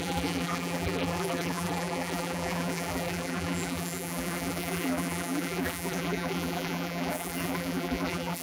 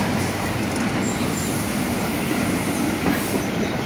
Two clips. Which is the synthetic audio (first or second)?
first